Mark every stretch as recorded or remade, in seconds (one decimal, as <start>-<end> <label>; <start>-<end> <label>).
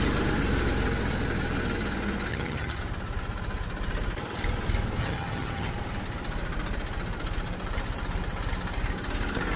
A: 0.0-2.3 recorded; 2.3-2.8 remade; 2.8-5.0 recorded; 5.0-5.7 remade; 5.7-9.6 recorded